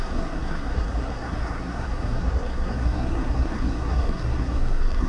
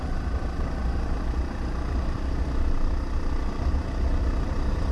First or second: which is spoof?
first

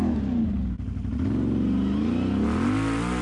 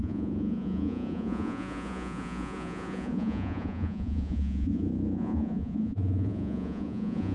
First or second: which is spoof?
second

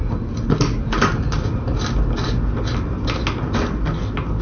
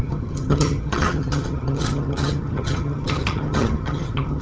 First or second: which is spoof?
second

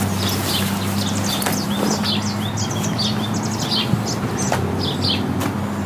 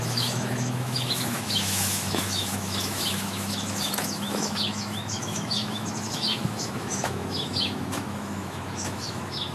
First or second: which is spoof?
second